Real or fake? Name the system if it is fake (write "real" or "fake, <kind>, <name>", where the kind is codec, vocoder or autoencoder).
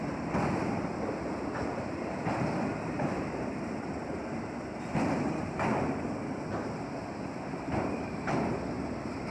fake, vocoder, BigVGAN v2